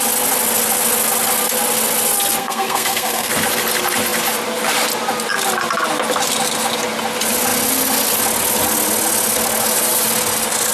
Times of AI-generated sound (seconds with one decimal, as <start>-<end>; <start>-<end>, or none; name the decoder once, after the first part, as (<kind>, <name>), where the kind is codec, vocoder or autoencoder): 2.4-3.3 (codec, SNAC)